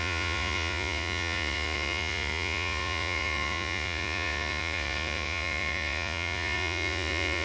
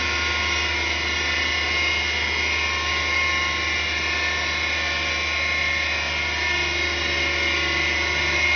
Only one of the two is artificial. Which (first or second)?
first